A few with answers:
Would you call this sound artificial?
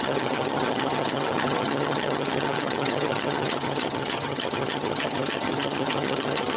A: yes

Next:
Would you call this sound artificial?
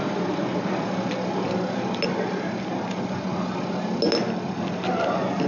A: no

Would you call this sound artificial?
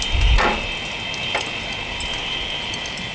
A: no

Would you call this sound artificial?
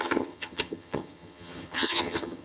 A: yes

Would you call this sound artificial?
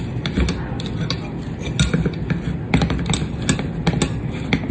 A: no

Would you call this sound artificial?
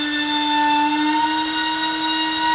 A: no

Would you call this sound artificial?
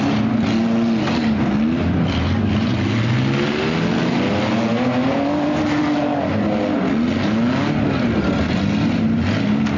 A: no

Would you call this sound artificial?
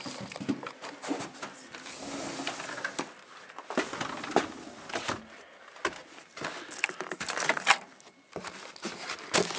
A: no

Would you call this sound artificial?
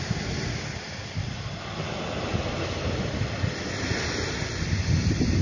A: no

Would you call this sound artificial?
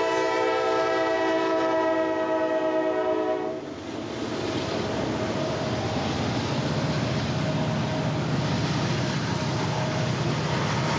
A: no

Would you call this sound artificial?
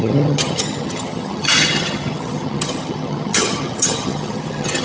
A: yes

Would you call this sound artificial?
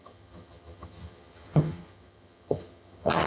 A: yes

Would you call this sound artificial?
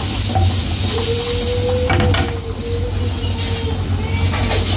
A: no